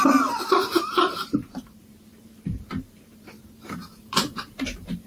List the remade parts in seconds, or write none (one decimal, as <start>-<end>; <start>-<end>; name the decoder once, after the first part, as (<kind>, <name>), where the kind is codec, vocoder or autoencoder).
0.0-5.1 (vocoder, BigVGAN v2)